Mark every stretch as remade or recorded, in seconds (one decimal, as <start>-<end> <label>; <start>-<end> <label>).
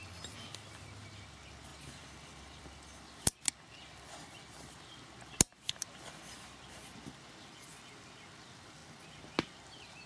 0.0-10.1 recorded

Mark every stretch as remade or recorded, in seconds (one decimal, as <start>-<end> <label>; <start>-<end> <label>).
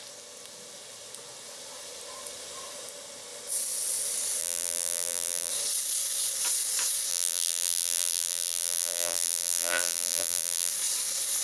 0.0-4.4 recorded; 4.4-5.5 remade; 5.5-7.1 recorded; 7.1-10.7 remade; 10.7-11.4 recorded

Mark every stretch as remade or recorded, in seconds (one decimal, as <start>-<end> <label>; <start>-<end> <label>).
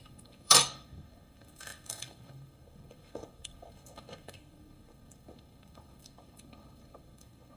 0.0-7.6 remade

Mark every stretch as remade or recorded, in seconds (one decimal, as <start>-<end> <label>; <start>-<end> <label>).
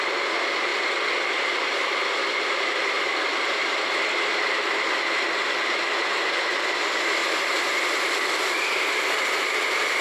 0.0-0.7 recorded; 0.7-1.5 remade; 1.5-7.2 recorded; 7.2-10.0 remade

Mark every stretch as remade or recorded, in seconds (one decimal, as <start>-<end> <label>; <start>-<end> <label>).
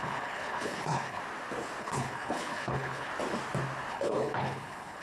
0.0-1.2 remade; 1.2-1.8 recorded; 1.8-3.1 remade; 3.1-3.9 recorded; 3.9-5.0 remade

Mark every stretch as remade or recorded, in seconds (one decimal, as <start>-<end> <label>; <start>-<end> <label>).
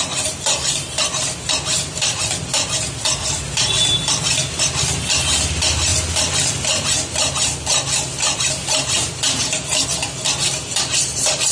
0.0-11.5 recorded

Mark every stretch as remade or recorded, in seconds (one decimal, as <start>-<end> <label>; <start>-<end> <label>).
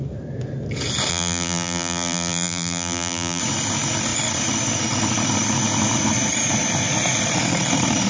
0.0-1.1 recorded; 1.1-3.4 remade; 3.4-8.1 recorded